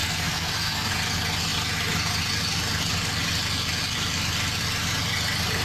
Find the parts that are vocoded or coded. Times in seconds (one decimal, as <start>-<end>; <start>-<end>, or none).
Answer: 0.0-0.9